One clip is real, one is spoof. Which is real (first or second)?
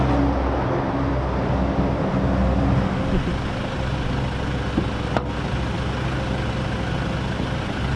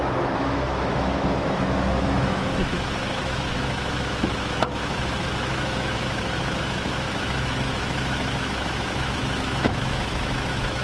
first